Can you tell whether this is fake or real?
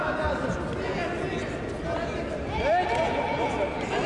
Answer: real